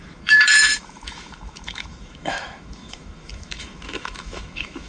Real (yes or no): no